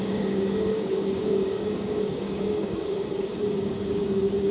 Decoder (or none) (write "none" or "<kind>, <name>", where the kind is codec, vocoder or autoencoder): codec, DAC